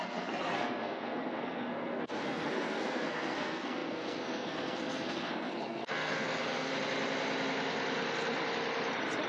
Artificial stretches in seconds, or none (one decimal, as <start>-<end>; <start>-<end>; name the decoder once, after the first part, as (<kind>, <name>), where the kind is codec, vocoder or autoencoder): 0.0-6.7 (codec, SNAC)